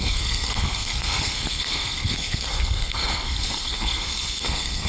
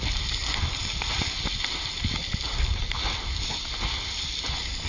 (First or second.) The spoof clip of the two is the first